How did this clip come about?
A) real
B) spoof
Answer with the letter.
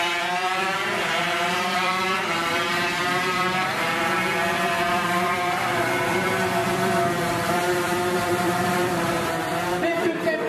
B